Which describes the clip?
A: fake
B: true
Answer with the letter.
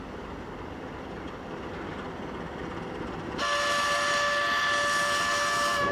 B